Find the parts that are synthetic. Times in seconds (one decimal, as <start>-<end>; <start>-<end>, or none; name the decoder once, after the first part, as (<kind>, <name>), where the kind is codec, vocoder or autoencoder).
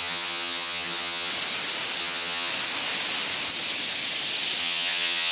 0.0-1.3 (vocoder, HiFi-GAN); 2.0-2.5; 4.6-5.3